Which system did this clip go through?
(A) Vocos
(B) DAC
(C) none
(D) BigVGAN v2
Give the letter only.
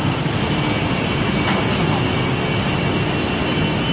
C